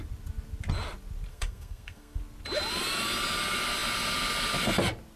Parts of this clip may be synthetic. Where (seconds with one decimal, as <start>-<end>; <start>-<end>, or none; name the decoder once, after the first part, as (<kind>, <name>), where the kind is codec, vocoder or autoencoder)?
1.3-2.2 (codec, SNAC)